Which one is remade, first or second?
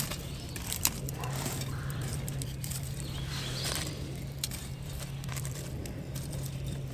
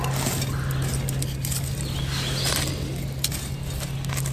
first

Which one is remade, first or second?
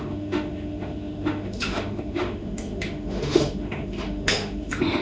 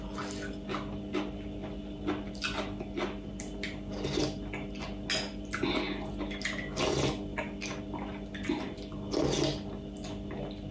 first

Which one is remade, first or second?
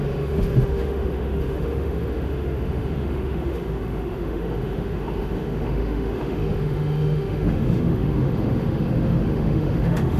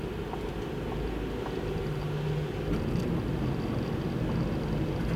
first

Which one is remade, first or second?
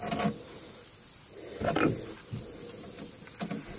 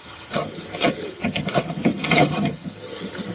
second